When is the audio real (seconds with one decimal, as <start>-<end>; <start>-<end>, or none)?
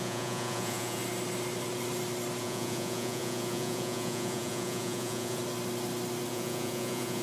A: 1.0-2.4; 5.4-6.3